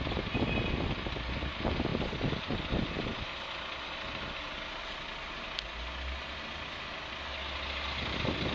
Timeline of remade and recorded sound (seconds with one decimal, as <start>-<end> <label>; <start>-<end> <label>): 0.0-8.5 recorded